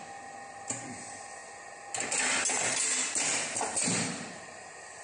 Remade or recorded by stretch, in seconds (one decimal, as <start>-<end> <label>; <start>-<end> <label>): 0.0-5.0 recorded